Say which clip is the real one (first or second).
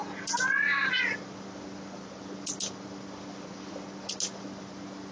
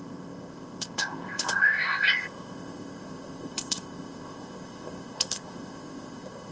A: first